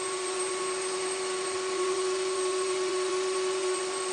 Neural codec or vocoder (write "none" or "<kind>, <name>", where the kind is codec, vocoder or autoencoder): vocoder, Vocos